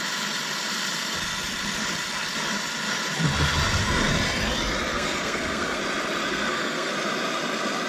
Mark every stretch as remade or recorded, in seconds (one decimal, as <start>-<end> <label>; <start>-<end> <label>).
0.0-4.9 recorded; 4.9-5.8 remade; 5.8-6.3 recorded; 6.3-6.9 remade; 6.9-7.9 recorded